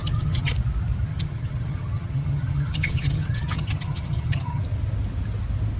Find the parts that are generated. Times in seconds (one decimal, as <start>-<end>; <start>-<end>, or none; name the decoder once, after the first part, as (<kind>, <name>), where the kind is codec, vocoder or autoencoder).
0.0-0.5 (vocoder, HiFi-GAN); 1.1-4.6